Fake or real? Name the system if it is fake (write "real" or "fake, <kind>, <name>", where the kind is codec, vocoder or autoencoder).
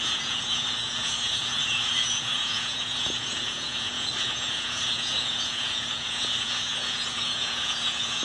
fake, vocoder, Vocos